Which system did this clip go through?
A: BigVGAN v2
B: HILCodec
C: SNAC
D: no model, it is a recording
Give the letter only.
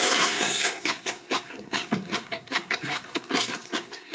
C